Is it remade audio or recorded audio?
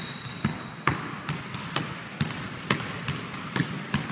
recorded